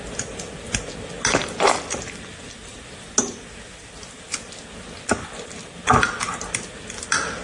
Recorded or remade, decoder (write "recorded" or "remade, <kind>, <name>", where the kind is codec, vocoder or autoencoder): recorded